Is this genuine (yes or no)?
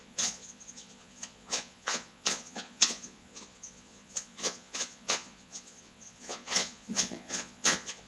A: no